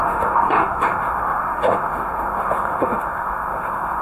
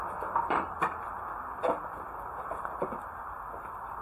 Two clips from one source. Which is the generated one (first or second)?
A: first